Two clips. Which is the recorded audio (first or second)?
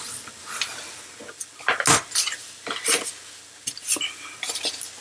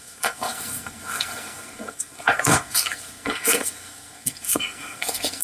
first